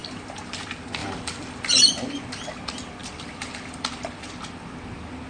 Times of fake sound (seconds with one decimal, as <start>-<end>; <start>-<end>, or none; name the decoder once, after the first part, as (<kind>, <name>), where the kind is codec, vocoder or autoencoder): 0.0-0.5 (vocoder, BigVGAN v2); 1.0-1.8; 3.0-4.3